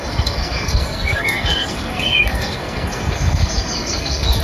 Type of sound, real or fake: fake